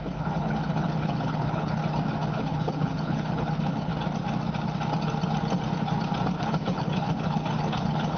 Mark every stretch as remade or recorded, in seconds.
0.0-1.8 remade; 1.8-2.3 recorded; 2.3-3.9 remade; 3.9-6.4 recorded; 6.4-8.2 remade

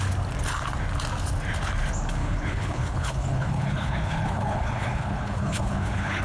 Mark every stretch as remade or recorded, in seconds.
0.0-2.2 recorded; 2.2-6.2 remade

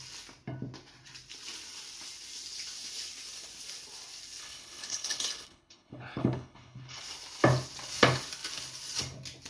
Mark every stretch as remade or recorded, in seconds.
0.0-4.4 recorded; 4.4-7.0 remade; 7.0-9.5 recorded

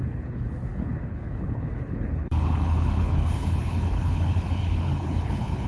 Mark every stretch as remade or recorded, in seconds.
0.0-5.7 remade

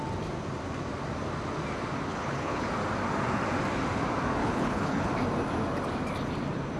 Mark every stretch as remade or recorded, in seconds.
0.0-2.1 recorded; 2.1-2.7 remade; 2.7-4.4 recorded; 4.4-5.1 remade; 5.1-6.8 recorded

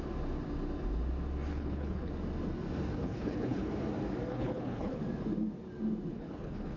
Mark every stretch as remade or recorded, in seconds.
0.0-1.5 recorded; 1.5-2.1 remade; 2.1-3.0 recorded; 3.0-3.7 remade; 3.7-4.3 recorded; 4.3-5.0 remade; 5.0-6.1 recorded; 6.1-6.8 remade

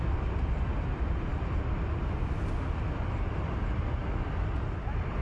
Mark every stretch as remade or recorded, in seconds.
0.0-5.2 recorded